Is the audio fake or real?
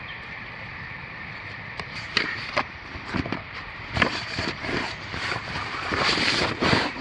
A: fake